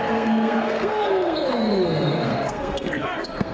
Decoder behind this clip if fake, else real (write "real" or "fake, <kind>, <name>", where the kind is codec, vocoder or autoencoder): fake, codec, SNAC